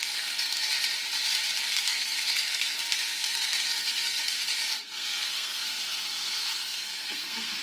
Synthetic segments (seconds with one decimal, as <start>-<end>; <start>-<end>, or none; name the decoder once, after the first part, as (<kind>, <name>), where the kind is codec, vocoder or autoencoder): 0.0-0.7 (codec, SNAC); 1.6-4.2; 4.7-7.6